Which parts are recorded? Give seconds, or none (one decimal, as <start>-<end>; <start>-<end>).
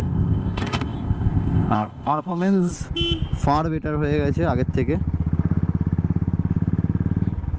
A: 2.7-7.6